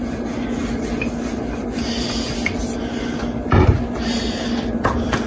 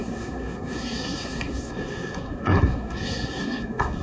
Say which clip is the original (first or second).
first